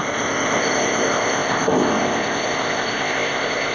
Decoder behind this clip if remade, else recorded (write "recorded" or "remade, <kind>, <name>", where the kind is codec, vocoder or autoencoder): remade, codec, ZipCodec